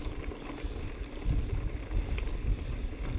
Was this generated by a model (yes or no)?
no